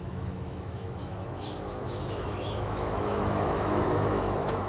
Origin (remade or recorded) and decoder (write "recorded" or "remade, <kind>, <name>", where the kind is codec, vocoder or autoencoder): remade, autoencoder, DAC-VAE